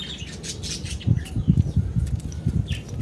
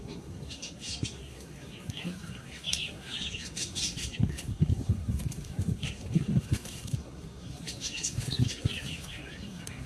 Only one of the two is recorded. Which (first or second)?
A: first